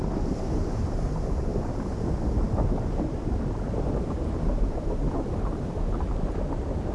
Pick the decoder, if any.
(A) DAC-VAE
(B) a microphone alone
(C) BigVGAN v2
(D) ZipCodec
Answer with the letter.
B